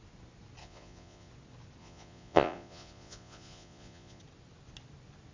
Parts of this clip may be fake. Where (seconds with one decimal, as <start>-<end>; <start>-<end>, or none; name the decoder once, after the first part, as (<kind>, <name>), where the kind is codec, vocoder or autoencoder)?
0.6-1.3 (vocoder, Vocos); 1.8-4.2